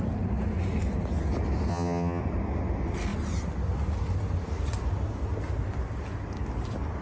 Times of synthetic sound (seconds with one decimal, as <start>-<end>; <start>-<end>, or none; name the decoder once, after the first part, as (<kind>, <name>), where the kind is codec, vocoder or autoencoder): 1.7-2.2 (vocoder, HiFi-GAN)